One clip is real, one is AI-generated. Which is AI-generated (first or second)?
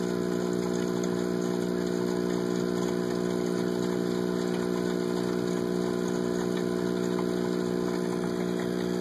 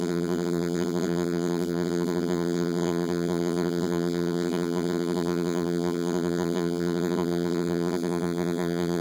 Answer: second